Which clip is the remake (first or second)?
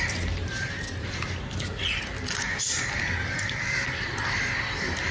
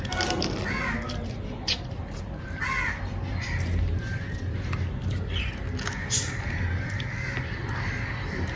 first